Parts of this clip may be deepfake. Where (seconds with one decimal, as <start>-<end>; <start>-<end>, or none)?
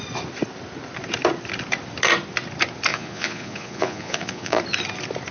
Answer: 2.9-4.6